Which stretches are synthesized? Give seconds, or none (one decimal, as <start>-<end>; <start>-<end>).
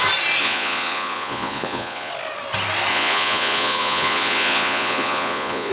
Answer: 0.4-2.1; 2.9-5.7